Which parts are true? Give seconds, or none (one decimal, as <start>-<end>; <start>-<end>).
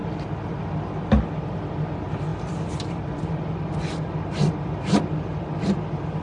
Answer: 0.0-6.2